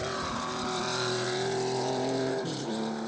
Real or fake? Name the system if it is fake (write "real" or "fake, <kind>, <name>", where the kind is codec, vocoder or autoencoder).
fake, vocoder, BigVGAN v2